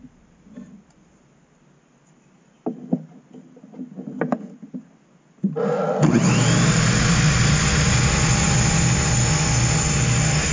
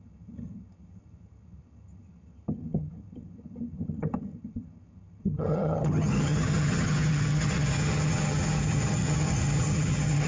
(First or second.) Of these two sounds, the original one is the first